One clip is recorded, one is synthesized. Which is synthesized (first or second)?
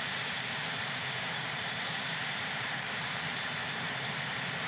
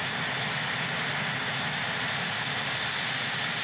first